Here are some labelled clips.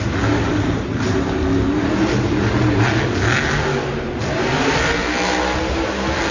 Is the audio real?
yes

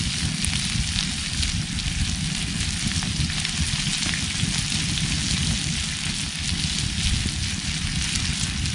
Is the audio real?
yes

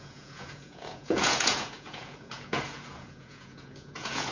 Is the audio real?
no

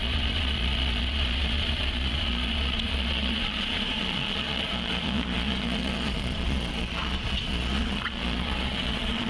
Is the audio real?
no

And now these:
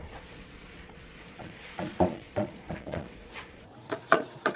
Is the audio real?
no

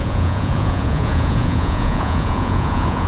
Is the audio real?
no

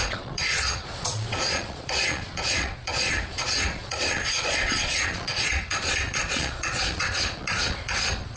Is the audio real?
no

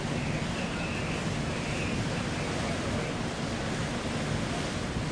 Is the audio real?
yes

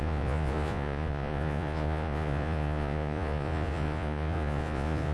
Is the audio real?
no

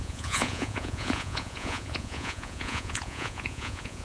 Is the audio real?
no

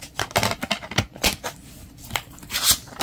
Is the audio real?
yes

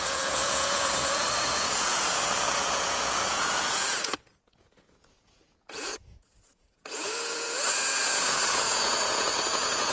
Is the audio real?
no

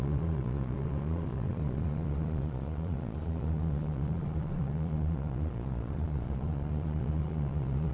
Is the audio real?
no